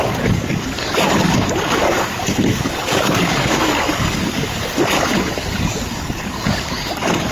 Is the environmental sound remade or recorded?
remade